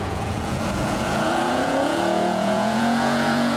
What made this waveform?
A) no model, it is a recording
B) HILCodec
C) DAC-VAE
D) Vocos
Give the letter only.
D